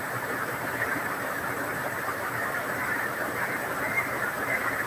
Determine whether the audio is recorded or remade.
remade